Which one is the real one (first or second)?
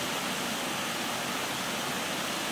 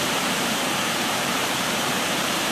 first